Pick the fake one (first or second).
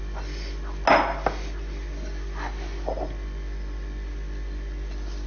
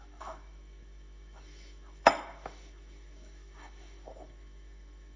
second